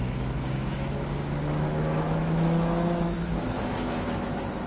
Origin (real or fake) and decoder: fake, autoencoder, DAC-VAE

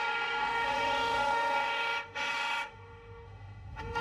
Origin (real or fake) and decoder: fake, autoencoder, DAC-VAE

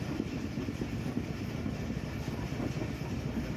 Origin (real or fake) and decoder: real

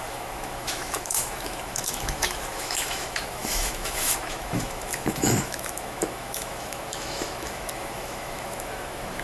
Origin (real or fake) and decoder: fake, autoencoder, DAC-VAE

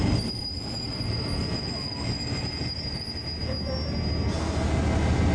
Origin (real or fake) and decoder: real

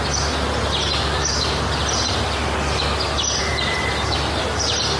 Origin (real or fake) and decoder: real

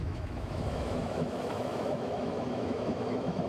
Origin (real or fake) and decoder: fake, autoencoder, DAC-VAE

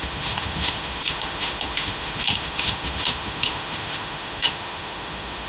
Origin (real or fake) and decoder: fake, autoencoder, DAC-VAE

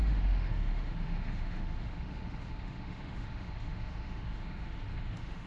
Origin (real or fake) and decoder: fake, autoencoder, DAC-VAE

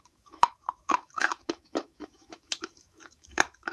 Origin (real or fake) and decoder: fake, autoencoder, DAC-VAE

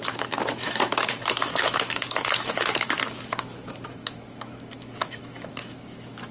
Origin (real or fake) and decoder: fake, autoencoder, DAC-VAE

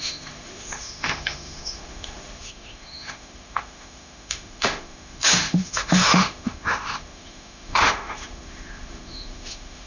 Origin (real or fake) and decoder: fake, autoencoder, DAC-VAE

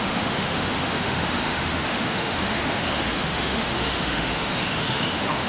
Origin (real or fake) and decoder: fake, autoencoder, DAC-VAE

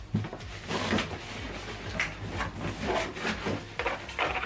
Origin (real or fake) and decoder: real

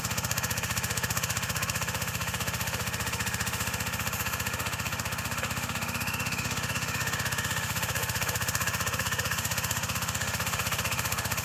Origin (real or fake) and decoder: fake, autoencoder, DAC-VAE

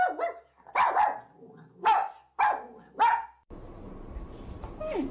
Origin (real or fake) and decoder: real